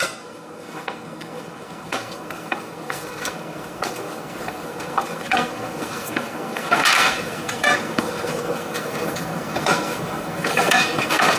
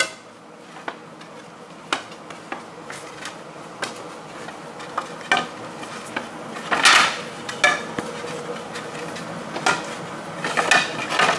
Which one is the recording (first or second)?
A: second